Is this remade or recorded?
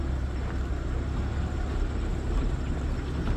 recorded